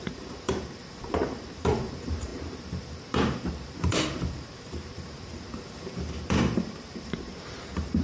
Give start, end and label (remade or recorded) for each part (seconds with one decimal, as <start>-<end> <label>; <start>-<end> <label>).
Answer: 0.0-8.0 remade